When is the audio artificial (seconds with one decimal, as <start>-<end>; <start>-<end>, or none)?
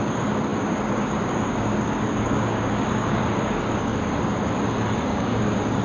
0.0-5.8